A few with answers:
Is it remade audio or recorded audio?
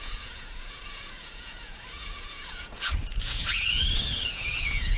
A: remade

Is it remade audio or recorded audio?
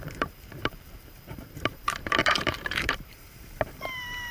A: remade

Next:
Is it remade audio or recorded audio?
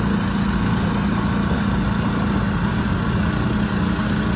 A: recorded